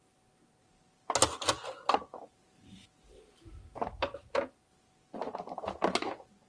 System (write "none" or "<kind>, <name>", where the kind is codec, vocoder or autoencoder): none